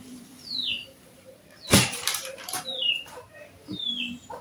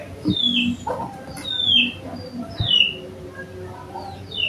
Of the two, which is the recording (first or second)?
second